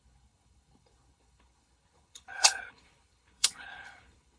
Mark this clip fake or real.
fake